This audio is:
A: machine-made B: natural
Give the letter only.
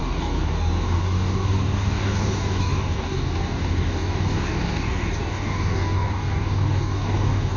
A